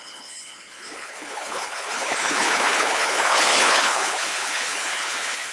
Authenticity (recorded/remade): remade